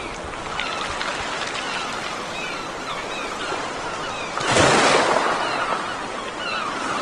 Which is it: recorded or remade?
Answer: recorded